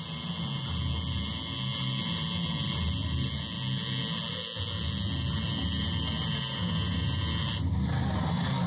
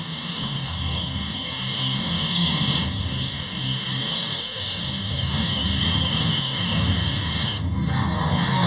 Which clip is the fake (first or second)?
second